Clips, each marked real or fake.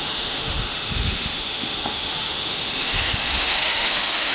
fake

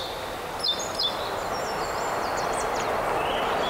real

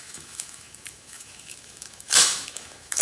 fake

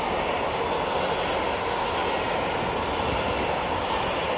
real